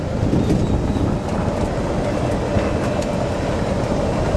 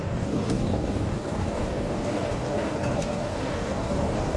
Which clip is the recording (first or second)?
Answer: first